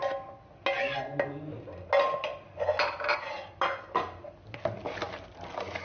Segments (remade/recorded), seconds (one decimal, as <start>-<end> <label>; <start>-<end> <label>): 0.0-5.8 recorded